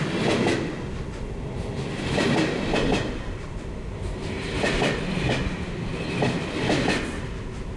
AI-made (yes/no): no